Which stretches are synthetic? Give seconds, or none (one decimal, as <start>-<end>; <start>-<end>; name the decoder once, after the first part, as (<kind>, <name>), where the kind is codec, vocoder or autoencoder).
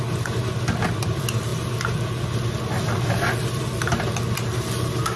none